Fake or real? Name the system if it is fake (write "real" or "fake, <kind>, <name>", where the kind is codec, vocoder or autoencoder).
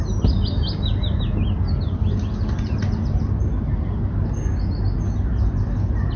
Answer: real